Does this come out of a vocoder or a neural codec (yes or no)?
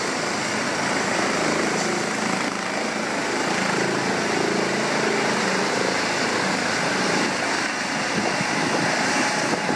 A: no